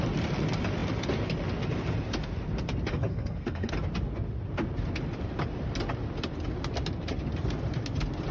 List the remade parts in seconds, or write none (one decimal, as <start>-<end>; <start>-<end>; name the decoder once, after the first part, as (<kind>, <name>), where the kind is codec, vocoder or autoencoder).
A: 2.9-3.7 (codec, SNAC)